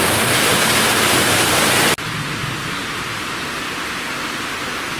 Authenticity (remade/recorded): recorded